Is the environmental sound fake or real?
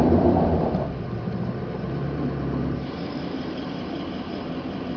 fake